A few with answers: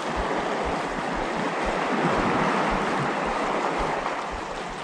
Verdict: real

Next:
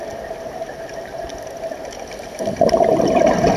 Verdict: real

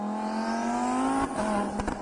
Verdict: real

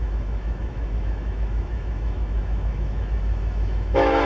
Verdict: fake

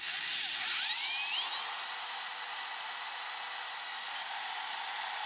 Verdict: real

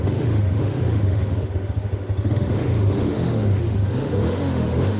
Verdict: fake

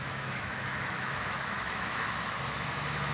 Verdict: fake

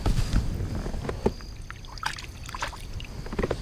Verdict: real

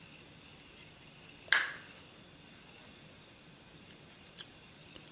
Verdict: real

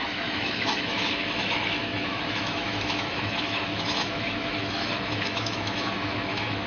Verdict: fake